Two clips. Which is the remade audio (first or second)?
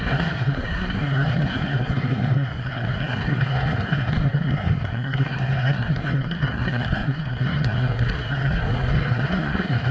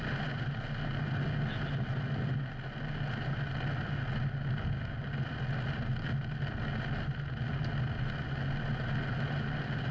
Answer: first